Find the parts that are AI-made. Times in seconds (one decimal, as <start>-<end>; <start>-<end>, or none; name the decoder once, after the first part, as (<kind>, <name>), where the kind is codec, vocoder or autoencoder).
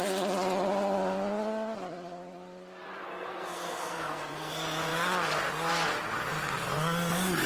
3.1-4.5 (codec, SNAC)